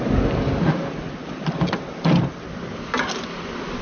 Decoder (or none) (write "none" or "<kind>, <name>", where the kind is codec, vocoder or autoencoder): none